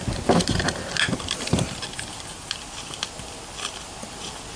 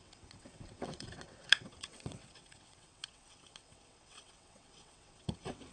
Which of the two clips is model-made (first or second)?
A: second